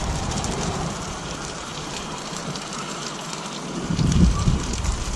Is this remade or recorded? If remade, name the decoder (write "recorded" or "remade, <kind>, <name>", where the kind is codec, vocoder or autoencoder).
remade, vocoder, BigVGAN v2